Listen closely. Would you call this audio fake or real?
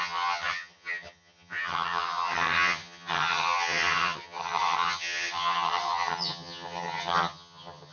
fake